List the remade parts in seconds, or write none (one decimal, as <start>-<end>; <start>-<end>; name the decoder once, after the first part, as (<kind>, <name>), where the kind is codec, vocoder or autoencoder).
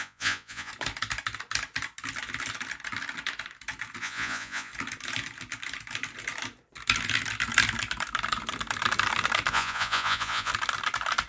0.0-0.7 (vocoder, Vocos); 4.0-4.7; 9.5-10.5